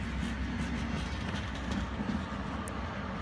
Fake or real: real